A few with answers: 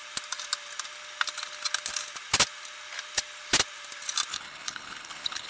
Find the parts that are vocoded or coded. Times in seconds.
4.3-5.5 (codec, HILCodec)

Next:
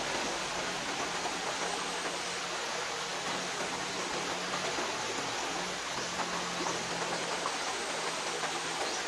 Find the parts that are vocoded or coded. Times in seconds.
none

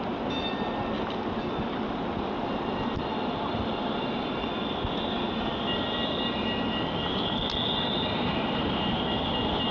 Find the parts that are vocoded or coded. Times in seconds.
none

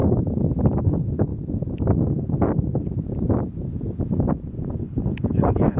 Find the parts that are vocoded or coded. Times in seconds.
0.8-1.3 (codec, HILCodec); 4.8-5.8

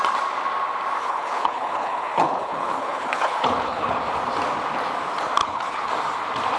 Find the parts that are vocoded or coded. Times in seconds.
1.0-4.0 (codec, HILCodec); 5.4-5.9